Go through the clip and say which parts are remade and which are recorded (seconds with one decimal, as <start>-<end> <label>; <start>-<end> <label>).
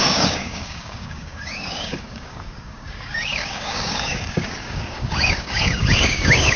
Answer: 0.0-6.6 remade